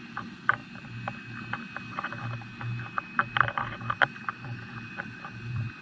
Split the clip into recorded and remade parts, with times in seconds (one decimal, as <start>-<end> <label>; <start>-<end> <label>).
0.0-0.6 remade; 0.6-3.8 recorded; 3.8-5.8 remade